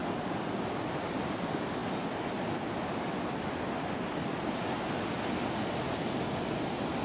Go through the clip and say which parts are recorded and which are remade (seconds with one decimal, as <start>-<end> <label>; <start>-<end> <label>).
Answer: 0.0-7.0 recorded